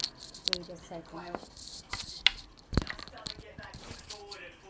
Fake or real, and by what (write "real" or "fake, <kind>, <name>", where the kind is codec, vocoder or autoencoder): real